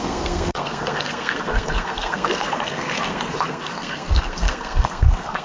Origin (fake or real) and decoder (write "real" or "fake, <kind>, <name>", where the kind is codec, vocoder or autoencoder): fake, codec, SNAC